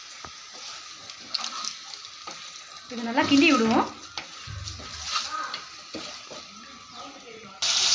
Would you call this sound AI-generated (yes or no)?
no